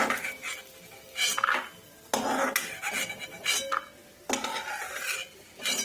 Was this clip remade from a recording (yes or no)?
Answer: no